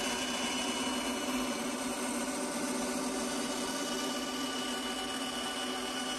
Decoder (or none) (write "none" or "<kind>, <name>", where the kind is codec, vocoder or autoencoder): none